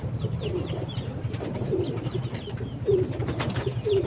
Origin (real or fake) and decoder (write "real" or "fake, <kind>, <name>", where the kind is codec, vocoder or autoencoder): fake, vocoder, BigVGAN v2